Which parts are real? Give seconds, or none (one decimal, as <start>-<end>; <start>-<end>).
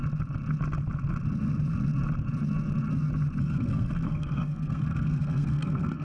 0.0-3.4